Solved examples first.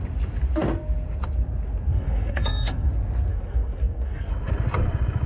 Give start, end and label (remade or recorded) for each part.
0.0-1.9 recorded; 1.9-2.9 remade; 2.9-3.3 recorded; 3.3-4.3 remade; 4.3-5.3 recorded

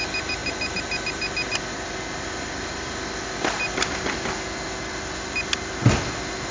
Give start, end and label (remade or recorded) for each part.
0.0-6.5 recorded

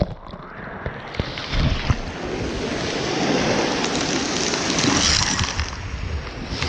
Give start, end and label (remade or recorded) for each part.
0.0-1.4 recorded; 1.4-2.2 remade; 2.2-6.7 recorded

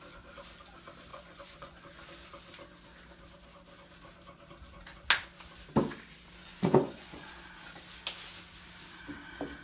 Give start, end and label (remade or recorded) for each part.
0.0-1.1 recorded; 1.1-1.8 remade; 1.8-6.4 recorded; 6.4-7.3 remade; 7.3-9.6 recorded